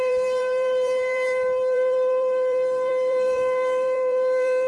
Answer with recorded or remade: remade